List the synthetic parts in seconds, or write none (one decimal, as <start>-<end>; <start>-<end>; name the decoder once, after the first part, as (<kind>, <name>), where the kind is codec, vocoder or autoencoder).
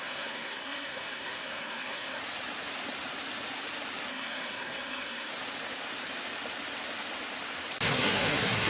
0.0-2.2 (codec, SNAC); 4.1-5.3; 7.9-8.7